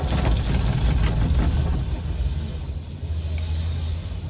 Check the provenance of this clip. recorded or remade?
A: recorded